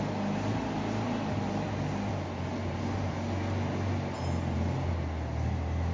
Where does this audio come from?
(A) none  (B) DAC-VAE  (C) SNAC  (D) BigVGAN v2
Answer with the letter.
A